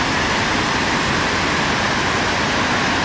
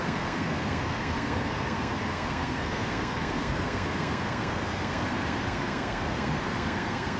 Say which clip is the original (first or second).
first